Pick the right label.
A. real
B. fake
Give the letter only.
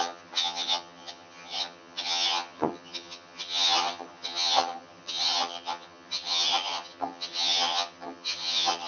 B